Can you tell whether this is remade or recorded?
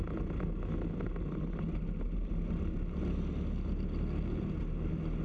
recorded